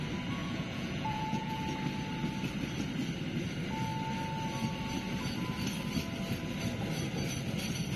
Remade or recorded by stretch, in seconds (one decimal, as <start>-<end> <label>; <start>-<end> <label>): 0.0-0.4 recorded; 0.4-1.6 remade; 1.6-8.0 recorded